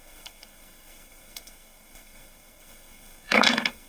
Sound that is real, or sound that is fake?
fake